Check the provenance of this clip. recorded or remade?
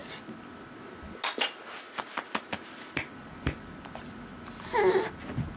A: recorded